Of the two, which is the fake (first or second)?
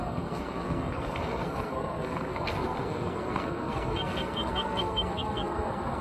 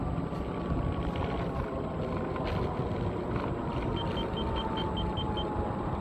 first